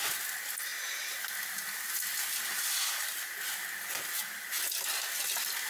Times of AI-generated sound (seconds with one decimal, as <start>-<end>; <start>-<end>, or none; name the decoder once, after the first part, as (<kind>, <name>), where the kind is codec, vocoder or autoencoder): none